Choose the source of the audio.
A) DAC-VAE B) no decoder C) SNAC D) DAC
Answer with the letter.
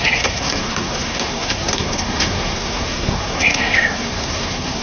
C